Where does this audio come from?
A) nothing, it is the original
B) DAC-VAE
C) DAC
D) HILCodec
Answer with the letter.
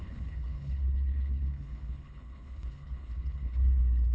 D